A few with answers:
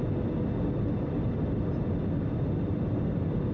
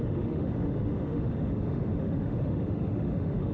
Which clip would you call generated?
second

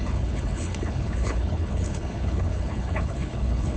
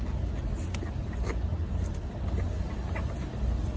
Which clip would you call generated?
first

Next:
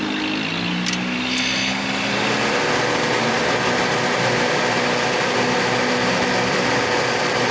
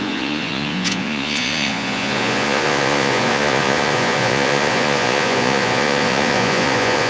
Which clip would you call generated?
second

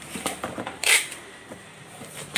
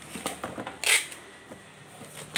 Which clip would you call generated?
first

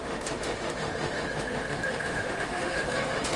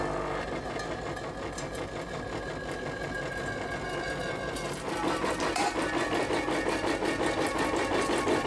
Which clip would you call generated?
first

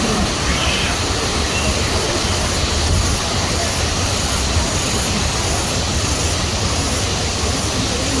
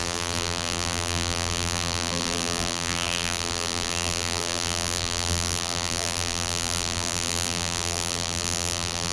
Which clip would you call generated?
second